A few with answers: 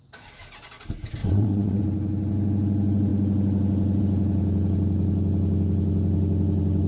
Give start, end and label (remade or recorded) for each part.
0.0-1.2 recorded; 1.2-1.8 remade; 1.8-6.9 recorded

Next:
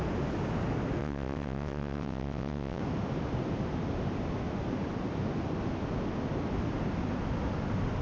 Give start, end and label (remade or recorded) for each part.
0.0-1.0 recorded; 1.0-2.8 remade; 2.8-8.0 recorded

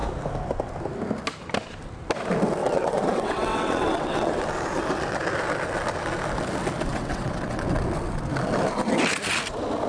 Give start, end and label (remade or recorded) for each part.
0.0-2.6 recorded; 2.6-4.4 remade; 4.4-6.9 recorded; 6.9-7.8 remade; 7.8-9.9 recorded

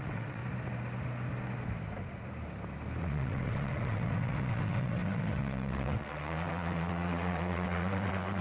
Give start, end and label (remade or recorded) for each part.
0.0-0.4 remade; 0.4-3.0 recorded; 3.0-8.4 remade

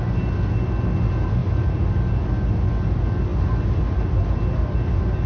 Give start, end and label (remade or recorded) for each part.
0.0-5.3 recorded

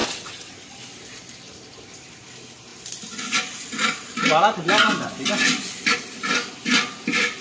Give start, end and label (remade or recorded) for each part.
0.0-0.5 remade; 0.5-7.4 recorded

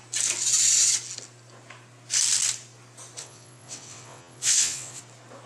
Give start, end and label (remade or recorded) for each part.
0.0-3.2 recorded; 3.2-5.0 remade; 5.0-5.5 recorded

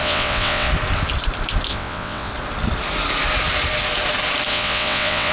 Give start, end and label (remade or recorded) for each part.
0.0-0.7 remade; 0.7-1.7 recorded; 1.7-2.3 remade; 2.3-4.5 recorded; 4.5-5.3 remade